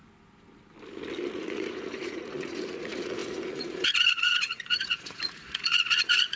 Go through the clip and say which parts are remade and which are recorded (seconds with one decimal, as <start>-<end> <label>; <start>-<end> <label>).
0.0-1.3 recorded; 1.3-6.4 remade